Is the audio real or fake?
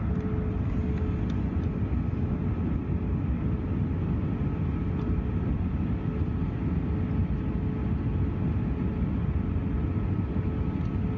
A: real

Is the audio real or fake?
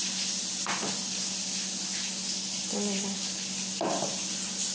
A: real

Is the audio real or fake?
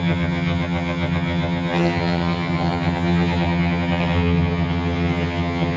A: fake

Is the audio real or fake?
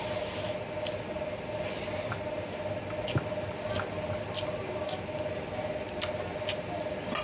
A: real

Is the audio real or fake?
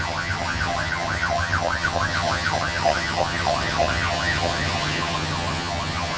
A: fake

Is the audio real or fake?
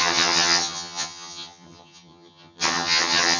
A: fake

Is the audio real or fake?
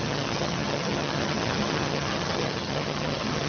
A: fake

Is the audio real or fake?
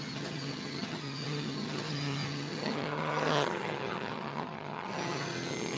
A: fake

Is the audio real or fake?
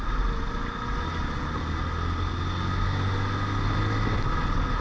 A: real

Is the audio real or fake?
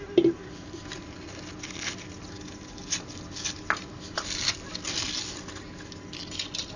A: real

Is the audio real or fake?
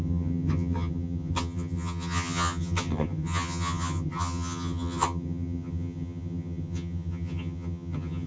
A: fake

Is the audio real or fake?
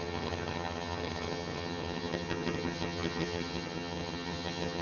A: fake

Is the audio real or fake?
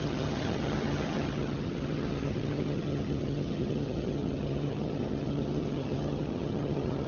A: fake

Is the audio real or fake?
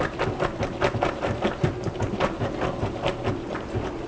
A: real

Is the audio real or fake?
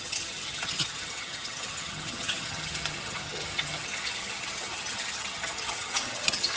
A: fake